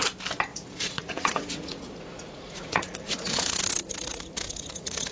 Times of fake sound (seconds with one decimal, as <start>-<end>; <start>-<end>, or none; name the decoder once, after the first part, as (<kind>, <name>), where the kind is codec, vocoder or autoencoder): 0.5-3.6 (vocoder, Vocos); 4.1-5.1

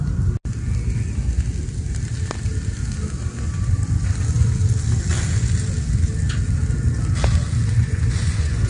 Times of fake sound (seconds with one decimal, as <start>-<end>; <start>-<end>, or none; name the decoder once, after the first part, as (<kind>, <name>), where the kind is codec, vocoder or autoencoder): 7.8-8.7 (vocoder, Vocos)

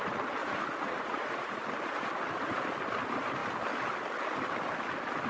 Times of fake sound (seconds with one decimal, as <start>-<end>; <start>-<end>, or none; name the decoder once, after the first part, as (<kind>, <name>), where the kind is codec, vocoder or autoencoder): 0.4-1.6 (vocoder, Vocos)

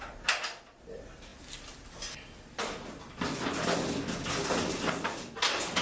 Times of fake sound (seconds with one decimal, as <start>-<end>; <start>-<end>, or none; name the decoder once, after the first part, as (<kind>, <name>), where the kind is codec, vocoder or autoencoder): none

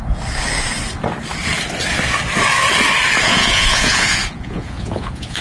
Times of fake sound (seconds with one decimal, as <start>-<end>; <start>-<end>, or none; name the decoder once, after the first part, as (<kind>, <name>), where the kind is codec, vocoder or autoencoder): 3.2-5.4 (vocoder, Vocos)

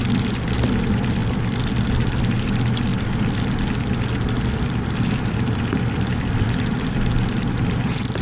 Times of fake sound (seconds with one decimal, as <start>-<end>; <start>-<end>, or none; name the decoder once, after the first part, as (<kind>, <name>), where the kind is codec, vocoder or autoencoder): none

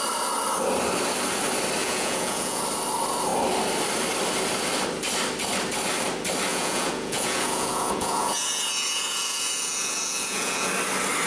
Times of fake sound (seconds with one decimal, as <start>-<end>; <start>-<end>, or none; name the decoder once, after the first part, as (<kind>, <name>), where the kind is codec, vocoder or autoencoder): 1.8-2.6 (vocoder, Vocos); 6.5-10.7

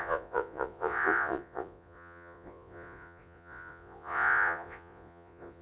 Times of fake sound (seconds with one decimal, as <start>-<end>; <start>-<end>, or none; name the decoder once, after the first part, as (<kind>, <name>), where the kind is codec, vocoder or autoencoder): 0.0-5.6 (vocoder, Vocos)